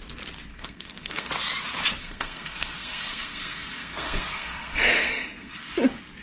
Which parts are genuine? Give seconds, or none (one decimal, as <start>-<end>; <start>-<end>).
0.0-0.5; 1.3-2.0; 5.7-6.2